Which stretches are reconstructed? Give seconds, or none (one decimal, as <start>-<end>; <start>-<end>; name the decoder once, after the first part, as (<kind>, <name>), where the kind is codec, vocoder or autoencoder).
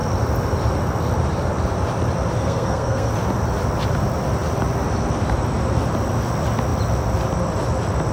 2.4-3.1 (codec, SNAC)